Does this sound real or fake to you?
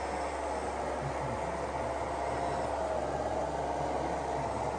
real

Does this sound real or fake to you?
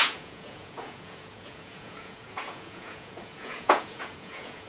fake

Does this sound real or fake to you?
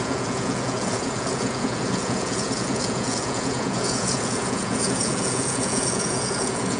fake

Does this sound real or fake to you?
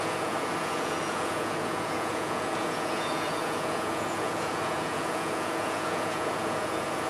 fake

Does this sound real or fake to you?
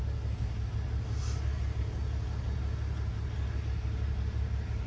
real